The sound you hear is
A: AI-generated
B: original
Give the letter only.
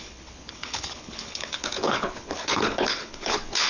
A